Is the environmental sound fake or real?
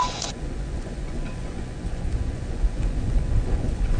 fake